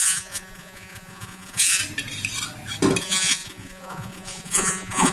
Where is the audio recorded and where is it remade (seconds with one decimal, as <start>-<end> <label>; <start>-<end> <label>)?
0.0-1.8 remade; 1.8-3.0 recorded; 3.0-5.1 remade